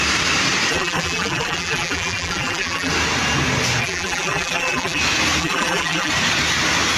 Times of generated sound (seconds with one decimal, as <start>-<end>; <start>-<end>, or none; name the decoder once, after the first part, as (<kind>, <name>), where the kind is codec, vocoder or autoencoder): 0.7-2.9 (vocoder, BigVGAN v2); 3.8-5.0; 5.4-6.1